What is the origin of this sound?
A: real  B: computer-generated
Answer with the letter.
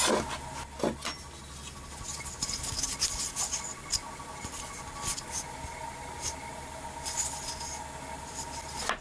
A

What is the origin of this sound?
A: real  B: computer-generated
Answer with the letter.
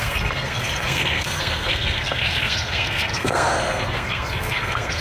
B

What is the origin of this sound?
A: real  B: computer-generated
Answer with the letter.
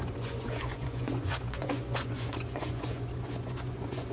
B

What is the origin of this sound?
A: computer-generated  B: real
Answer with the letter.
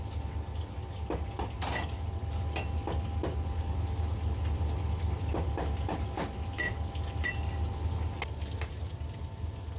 B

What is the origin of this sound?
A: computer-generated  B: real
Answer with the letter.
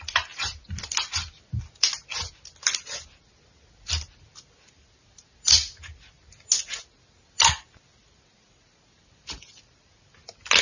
B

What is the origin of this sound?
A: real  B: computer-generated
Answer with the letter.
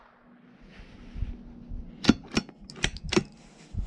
A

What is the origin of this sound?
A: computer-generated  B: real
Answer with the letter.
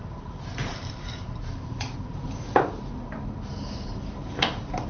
A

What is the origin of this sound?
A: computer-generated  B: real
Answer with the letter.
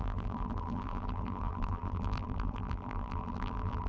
A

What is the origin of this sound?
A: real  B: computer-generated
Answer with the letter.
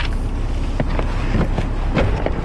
A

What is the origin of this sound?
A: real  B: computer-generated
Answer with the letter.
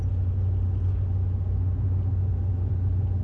A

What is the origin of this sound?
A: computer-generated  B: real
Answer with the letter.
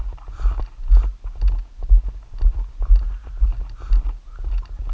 B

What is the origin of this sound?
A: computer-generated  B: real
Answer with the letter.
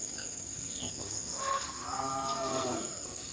A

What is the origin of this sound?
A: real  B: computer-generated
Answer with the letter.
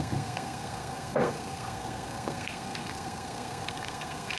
B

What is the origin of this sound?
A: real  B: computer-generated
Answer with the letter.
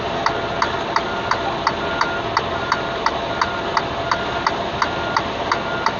A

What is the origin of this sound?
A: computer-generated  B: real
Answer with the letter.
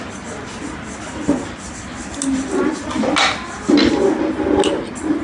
B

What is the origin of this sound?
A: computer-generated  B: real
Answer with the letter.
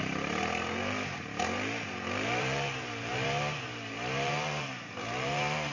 A